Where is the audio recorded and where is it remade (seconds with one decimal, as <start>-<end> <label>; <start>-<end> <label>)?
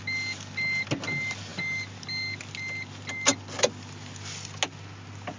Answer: 0.0-5.4 recorded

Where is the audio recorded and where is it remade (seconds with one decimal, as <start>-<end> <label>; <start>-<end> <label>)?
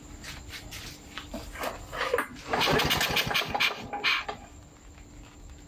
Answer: 0.0-5.7 recorded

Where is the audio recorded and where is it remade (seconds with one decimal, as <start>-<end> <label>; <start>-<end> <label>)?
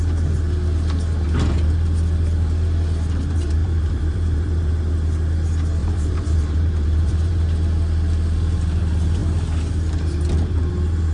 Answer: 0.0-3.6 recorded; 3.6-4.7 remade; 4.7-5.8 recorded; 5.8-7.4 remade; 7.4-11.1 recorded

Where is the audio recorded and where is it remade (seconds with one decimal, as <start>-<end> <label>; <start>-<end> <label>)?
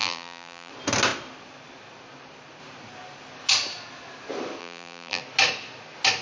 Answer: 0.0-0.7 remade; 0.7-4.6 recorded; 4.6-5.2 remade; 5.2-6.2 recorded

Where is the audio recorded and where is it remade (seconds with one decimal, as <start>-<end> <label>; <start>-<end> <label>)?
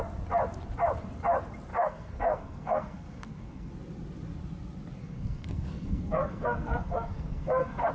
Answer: 0.0-1.7 recorded; 1.7-3.7 remade; 3.7-5.0 recorded; 5.0-7.9 remade